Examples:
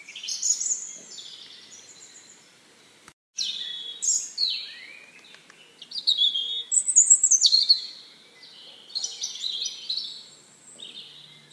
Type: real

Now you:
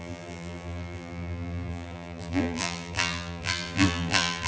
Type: fake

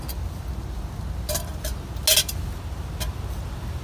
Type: real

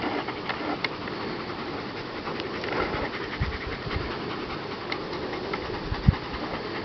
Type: real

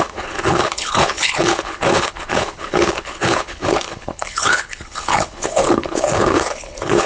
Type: fake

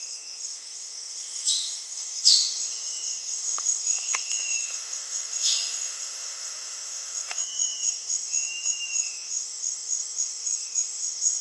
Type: fake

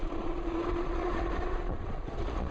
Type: fake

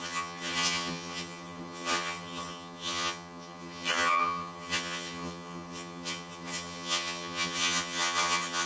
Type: fake